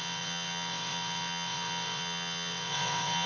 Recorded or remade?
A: remade